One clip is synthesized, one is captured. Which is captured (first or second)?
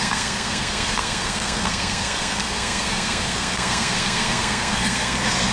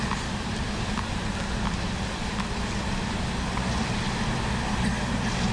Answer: second